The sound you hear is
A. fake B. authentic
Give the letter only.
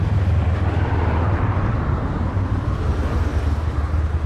B